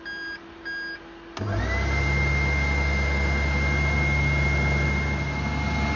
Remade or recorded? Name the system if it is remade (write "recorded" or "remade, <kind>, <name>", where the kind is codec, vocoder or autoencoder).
recorded